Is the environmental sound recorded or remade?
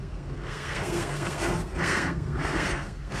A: remade